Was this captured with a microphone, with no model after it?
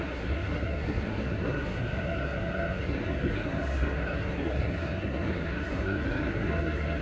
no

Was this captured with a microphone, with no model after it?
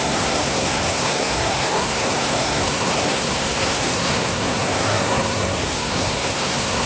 no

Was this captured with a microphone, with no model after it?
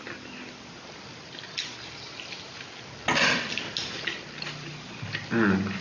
yes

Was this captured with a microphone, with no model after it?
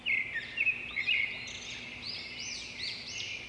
yes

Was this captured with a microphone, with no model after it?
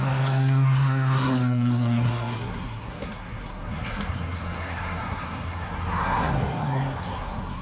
no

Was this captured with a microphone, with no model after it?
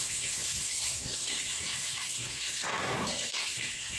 no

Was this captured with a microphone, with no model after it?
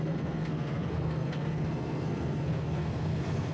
no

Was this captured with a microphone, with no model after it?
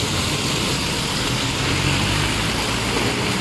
yes